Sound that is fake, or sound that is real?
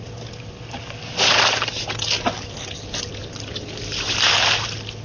real